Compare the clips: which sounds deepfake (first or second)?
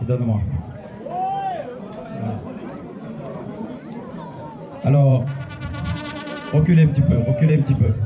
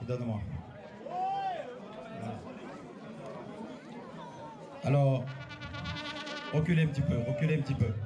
first